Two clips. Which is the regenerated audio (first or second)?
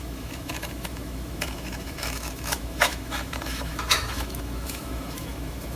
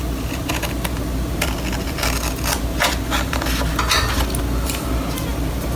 first